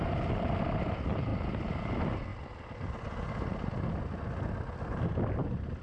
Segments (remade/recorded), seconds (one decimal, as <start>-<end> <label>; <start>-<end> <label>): 0.0-5.8 recorded